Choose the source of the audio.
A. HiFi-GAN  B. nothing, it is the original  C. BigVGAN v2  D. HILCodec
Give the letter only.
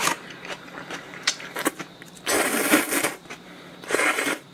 C